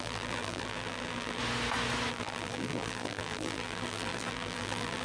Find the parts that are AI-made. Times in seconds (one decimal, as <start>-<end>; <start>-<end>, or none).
0.0-1.4; 2.1-5.0